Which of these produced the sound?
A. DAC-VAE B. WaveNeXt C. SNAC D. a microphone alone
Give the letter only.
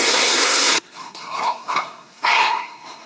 C